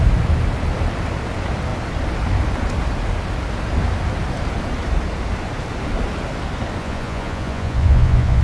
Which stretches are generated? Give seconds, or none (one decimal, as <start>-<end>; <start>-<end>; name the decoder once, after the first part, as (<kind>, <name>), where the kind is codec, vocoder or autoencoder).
6.8-8.4 (vocoder, Vocos)